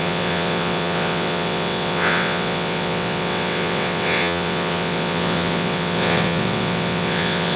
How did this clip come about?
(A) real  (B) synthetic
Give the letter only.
B